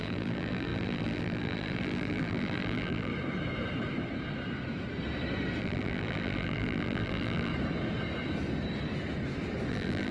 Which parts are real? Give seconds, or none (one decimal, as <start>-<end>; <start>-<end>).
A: 3.1-5.6; 7.5-9.7